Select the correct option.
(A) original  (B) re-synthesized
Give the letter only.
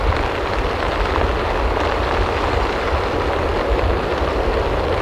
A